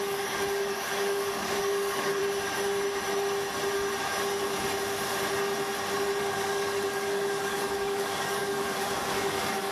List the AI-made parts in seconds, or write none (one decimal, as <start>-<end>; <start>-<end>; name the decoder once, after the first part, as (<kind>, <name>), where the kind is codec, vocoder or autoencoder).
0.0-2.2 (codec, DAC); 6.2-9.7